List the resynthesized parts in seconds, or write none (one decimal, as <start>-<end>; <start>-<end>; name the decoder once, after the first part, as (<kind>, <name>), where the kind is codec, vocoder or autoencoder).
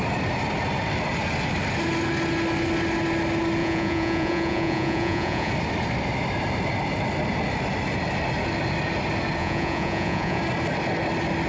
3.6-5.5 (vocoder, Vocos); 9.4-10.4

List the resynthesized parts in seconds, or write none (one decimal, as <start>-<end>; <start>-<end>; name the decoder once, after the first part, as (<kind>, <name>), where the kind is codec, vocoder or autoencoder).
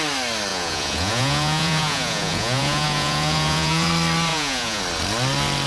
0.5-3.9 (vocoder, Vocos); 4.3-4.8